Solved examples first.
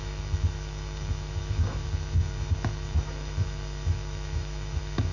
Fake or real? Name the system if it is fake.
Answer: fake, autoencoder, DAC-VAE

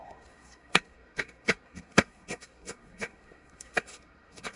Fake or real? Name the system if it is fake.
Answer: fake, codec, SNAC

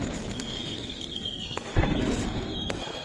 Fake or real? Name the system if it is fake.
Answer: fake, codec, SNAC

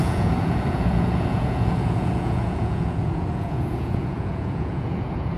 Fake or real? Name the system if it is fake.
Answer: fake, vocoder, Vocos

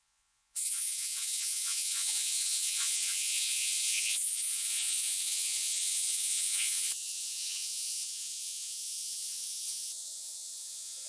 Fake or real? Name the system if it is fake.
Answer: fake, vocoder, Vocos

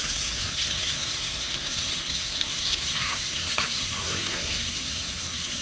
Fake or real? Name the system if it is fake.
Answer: fake, codec, SNAC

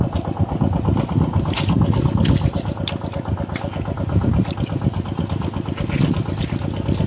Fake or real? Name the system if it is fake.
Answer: real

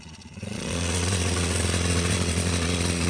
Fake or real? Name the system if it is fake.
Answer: fake, vocoder, Vocos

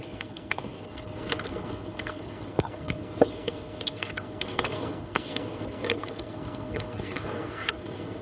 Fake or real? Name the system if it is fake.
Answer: fake, codec, SNAC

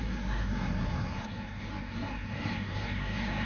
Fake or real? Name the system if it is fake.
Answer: fake, codec, SNAC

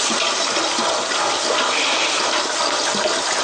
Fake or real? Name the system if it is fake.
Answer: real